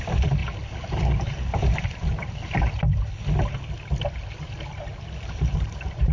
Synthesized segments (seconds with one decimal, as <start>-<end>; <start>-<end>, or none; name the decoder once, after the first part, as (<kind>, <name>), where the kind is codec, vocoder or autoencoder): 0.0-0.4 (vocoder, BigVGAN v2); 1.6-2.0; 5.2-6.1

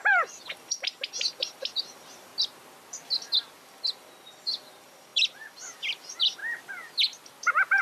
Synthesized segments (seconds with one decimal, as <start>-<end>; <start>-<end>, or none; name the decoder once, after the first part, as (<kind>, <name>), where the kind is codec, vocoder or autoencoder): 0.0-2.3 (vocoder, BigVGAN v2); 3.6-6.4

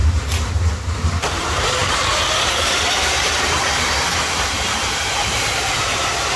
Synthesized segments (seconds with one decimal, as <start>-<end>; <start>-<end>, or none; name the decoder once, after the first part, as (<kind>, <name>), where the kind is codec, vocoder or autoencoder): 1.0-6.4 (vocoder, BigVGAN v2)

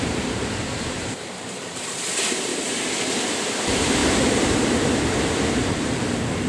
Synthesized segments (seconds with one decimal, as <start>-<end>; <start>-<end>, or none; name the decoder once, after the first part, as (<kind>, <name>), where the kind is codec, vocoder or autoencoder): 0.0-2.5 (vocoder, BigVGAN v2); 3.2-6.5

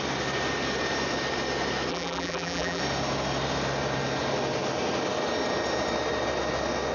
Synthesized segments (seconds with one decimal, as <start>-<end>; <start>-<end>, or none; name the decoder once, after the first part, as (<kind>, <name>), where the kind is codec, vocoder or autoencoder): 1.9-2.8 (vocoder, BigVGAN v2)

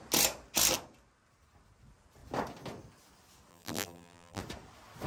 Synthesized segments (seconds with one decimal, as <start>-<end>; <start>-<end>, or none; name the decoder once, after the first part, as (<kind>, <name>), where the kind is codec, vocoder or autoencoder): 3.5-4.4 (vocoder, BigVGAN v2)

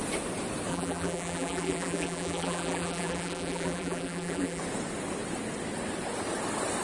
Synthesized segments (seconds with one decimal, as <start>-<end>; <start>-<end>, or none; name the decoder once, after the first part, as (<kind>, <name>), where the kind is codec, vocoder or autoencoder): 0.7-4.6 (vocoder, BigVGAN v2)